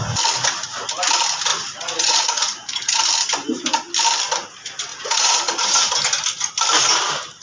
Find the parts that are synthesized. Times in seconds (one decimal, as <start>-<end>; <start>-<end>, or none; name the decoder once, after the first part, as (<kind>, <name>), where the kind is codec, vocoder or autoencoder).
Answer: 1.5-3.0 (vocoder, Vocos); 4.9-5.9